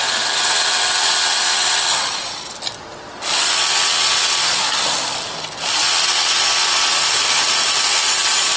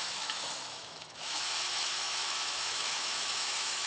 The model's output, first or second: second